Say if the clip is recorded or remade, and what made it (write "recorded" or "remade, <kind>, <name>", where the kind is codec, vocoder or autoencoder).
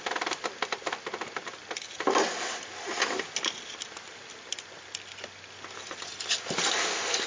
recorded